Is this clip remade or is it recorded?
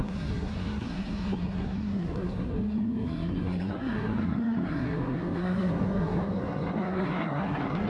remade